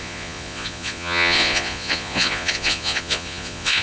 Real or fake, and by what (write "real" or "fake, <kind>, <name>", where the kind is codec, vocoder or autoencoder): fake, vocoder, Vocos